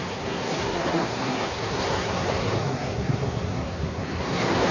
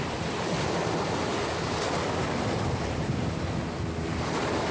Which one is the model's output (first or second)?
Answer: first